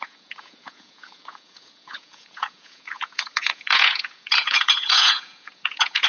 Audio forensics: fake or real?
fake